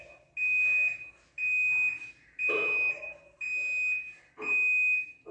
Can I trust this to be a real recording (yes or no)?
yes